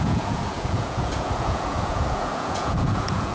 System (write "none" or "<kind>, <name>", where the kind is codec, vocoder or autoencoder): vocoder, Vocos